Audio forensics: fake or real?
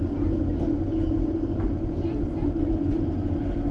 real